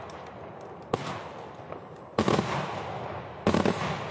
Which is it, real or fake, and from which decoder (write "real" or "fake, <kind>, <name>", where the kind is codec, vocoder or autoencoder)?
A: real